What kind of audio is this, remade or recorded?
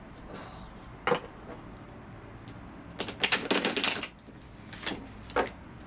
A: recorded